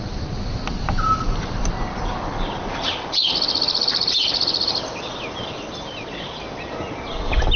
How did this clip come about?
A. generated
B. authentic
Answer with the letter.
B